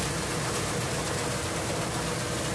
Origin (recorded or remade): recorded